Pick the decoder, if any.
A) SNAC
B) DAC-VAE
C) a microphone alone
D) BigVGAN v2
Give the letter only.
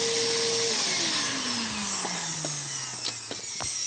C